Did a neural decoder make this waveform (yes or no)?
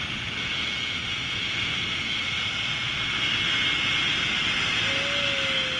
no